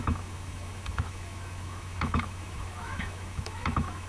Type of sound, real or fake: fake